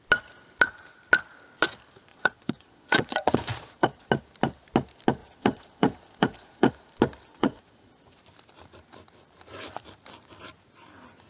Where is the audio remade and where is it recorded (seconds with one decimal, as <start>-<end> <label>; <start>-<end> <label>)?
0.0-2.1 recorded; 2.1-4.1 remade; 4.1-5.2 recorded; 5.2-6.7 remade; 6.7-7.3 recorded; 7.3-8.2 remade; 8.2-11.3 recorded